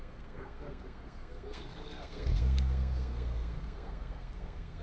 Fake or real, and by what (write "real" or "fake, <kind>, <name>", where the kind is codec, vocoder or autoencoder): fake, codec, SNAC